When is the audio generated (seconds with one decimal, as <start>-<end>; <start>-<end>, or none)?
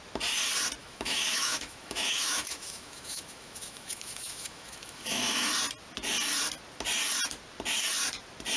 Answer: 0.8-5.5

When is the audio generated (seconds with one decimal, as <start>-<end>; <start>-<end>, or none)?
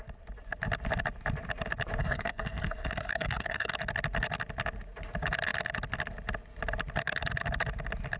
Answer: 2.0-3.7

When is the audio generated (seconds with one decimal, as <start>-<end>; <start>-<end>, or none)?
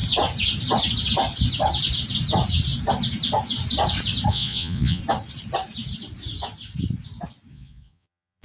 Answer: 4.3-5.0; 7.5-8.4